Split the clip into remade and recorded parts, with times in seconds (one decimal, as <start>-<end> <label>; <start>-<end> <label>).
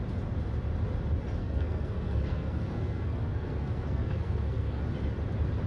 0.0-1.4 recorded; 1.4-4.8 remade; 4.8-5.7 recorded